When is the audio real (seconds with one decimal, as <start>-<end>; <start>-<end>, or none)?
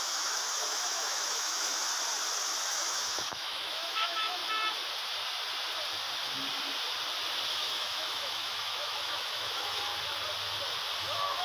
1.8-2.7; 4.4-7.5; 9.9-11.0